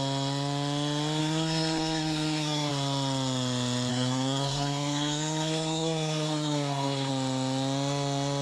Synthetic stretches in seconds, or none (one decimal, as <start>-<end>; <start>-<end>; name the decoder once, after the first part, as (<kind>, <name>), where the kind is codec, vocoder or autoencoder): 1.2-2.7 (codec, SNAC); 3.9-7.1